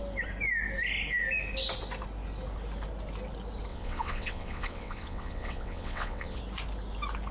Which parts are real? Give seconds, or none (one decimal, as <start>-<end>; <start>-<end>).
0.0-3.7; 6.4-7.3